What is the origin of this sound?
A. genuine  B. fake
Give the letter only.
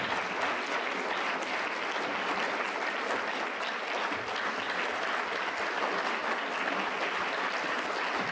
A